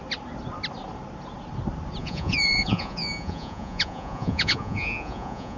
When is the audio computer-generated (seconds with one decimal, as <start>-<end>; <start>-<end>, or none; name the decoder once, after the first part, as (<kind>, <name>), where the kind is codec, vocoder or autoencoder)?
2.0-5.6 (vocoder, Vocos)